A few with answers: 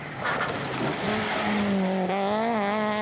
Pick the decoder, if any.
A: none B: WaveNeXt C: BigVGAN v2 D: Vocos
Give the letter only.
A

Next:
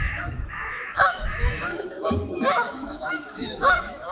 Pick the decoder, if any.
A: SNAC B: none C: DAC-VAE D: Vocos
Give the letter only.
C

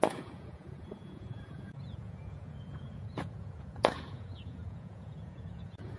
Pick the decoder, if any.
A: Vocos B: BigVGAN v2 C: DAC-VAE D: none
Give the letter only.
A